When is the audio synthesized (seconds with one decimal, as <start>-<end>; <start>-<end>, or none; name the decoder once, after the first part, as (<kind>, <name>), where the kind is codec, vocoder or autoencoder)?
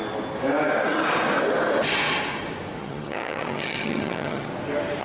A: 2.8-4.5 (vocoder, HiFi-GAN)